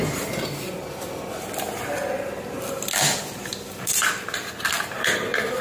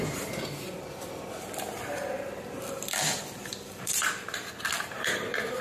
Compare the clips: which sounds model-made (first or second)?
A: second